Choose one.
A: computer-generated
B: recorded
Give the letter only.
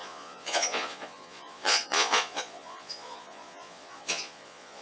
A